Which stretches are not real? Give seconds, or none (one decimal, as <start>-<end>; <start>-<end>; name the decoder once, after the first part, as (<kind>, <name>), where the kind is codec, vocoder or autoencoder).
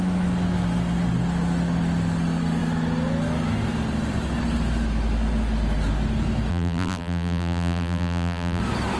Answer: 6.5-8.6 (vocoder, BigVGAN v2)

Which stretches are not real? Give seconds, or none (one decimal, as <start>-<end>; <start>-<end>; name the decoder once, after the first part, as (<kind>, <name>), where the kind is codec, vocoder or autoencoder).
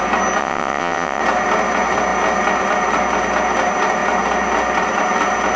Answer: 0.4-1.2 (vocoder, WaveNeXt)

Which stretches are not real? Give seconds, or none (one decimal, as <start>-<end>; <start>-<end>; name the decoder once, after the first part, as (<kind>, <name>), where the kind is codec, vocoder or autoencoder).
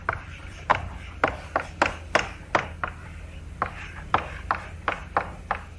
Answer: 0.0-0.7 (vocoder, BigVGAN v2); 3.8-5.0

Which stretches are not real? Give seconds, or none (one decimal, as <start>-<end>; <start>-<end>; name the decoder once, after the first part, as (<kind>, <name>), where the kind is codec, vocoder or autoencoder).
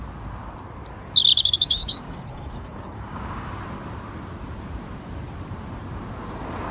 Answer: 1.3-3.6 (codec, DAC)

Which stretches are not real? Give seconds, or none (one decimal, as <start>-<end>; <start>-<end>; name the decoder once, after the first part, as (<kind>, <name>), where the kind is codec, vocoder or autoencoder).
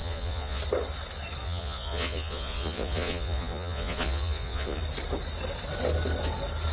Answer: 0.0-0.6 (vocoder, Vocos); 1.4-4.8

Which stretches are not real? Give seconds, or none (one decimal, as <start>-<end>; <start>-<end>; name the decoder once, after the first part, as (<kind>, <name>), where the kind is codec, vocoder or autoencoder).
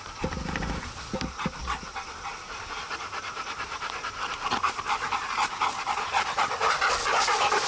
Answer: none